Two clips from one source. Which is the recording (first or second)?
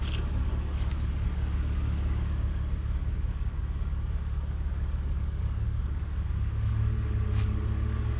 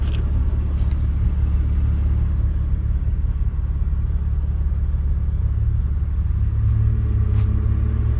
second